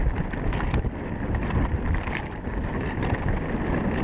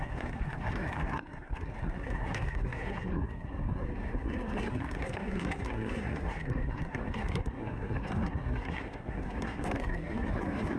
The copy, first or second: second